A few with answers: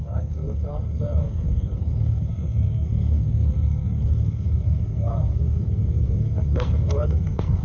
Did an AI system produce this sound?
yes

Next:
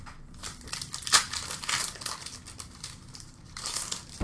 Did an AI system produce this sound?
no